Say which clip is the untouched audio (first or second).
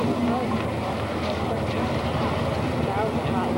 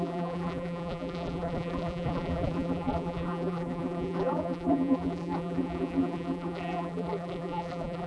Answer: first